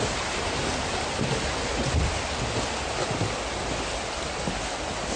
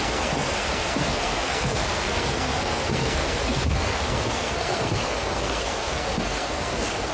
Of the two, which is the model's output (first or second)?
second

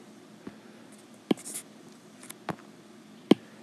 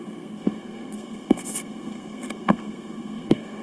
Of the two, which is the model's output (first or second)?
second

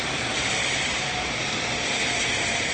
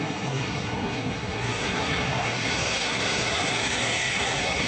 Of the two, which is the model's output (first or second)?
second